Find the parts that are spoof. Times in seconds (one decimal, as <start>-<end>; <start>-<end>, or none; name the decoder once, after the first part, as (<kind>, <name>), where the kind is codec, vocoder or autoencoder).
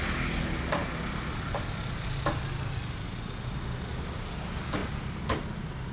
none